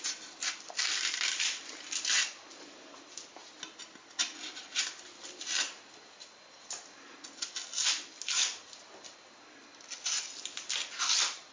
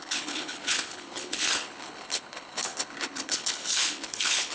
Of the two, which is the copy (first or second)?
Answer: second